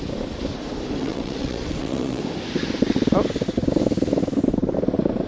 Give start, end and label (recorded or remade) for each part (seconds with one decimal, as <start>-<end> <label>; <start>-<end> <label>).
0.0-1.0 recorded; 1.0-2.2 remade; 2.2-5.3 recorded